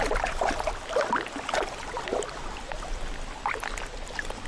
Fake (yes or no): no